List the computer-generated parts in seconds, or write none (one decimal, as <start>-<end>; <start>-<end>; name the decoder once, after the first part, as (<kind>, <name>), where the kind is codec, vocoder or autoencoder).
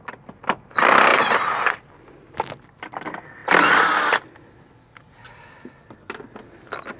none